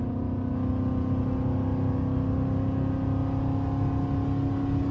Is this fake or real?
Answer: real